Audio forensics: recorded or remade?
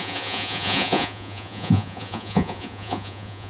remade